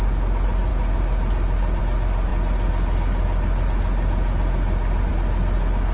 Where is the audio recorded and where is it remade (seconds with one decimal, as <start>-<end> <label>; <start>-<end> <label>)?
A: 0.0-5.9 recorded